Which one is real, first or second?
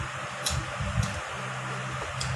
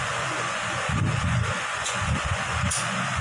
first